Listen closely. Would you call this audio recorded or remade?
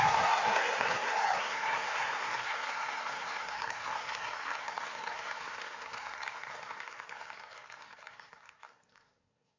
remade